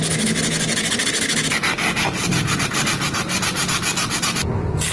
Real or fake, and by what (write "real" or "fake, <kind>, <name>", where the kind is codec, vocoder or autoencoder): real